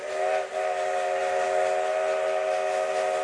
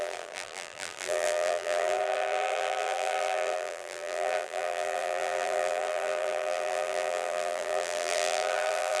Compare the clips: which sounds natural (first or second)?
first